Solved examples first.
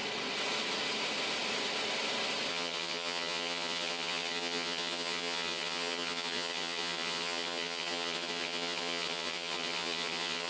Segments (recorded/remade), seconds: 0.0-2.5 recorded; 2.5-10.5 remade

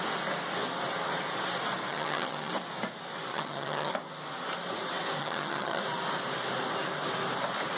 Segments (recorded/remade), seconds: 0.0-1.9 recorded; 1.9-2.5 remade; 2.5-3.3 recorded; 3.3-3.9 remade; 3.9-5.2 recorded; 5.2-5.8 remade; 5.8-7.8 recorded

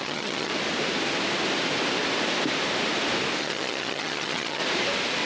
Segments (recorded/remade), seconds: 0.0-0.5 remade; 0.5-3.4 recorded; 3.4-4.6 remade; 4.6-5.3 recorded

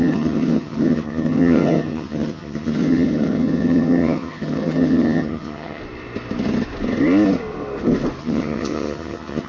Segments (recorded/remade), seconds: 0.0-5.8 remade; 5.8-8.2 recorded; 8.2-9.5 remade

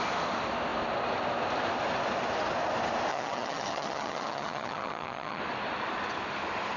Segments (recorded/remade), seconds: 0.0-3.1 recorded; 3.1-5.4 remade; 5.4-6.8 recorded